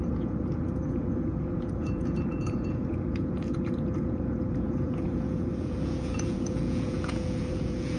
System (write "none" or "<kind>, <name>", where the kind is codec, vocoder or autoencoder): vocoder, Vocos